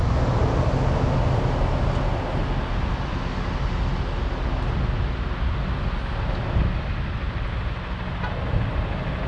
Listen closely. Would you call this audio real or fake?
real